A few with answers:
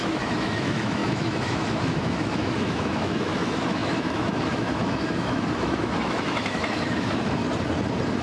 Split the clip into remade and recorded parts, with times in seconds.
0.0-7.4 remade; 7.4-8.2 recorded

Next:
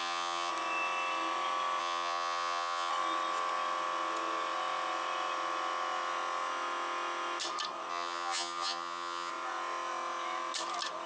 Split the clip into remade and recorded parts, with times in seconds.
0.0-0.5 remade; 0.5-1.8 recorded; 1.8-2.9 remade; 2.9-7.9 recorded; 7.9-9.3 remade; 9.3-11.1 recorded

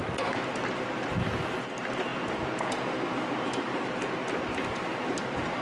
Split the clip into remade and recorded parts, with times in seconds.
0.0-5.6 recorded